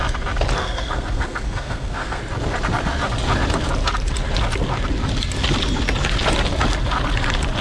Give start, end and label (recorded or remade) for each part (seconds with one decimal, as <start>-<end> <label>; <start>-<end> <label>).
0.0-0.6 recorded; 0.6-2.2 remade; 2.2-7.6 recorded